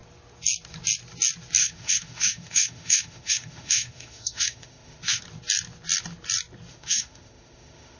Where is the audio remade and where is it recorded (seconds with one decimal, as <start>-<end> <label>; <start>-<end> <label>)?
0.0-1.6 recorded; 1.6-5.2 remade; 5.2-6.7 recorded; 6.7-8.0 remade